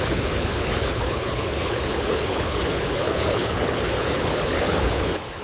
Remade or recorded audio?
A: remade